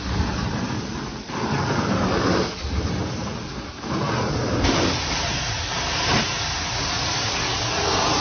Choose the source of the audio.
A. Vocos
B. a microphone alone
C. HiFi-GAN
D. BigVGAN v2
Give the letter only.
D